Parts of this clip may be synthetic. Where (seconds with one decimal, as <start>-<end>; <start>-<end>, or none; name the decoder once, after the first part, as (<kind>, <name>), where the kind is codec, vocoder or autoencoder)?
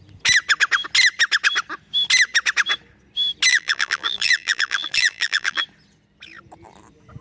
3.5-5.6 (vocoder, BigVGAN v2)